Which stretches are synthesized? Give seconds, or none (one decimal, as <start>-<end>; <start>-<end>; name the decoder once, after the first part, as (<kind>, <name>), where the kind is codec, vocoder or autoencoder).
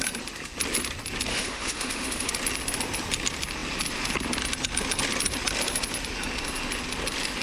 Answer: 1.3-2.3 (autoencoder, DAC-VAE)